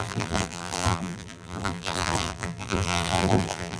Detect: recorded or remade remade